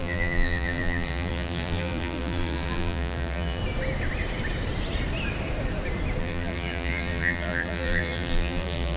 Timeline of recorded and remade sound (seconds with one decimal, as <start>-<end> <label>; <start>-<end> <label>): 0.0-3.6 remade; 3.6-6.2 recorded; 6.2-9.0 remade